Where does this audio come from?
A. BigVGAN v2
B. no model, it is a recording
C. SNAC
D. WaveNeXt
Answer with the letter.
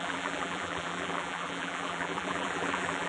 A